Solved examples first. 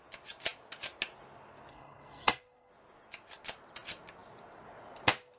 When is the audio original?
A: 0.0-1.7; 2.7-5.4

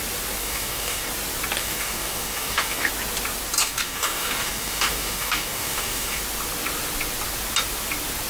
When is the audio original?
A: 0.0-0.4; 1.1-1.6; 2.9-3.6; 6.2-8.3

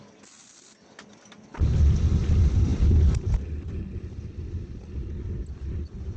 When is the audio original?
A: 0.0-6.2

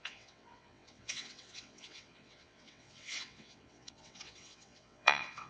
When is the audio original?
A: none

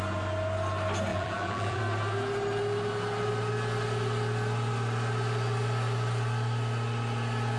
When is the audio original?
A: 0.0-1.1; 1.8-7.6

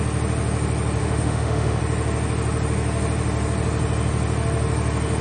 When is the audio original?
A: 0.0-1.0; 1.8-5.2

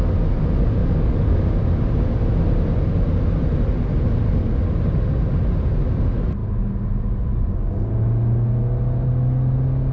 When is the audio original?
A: 0.0-0.8; 1.5-9.9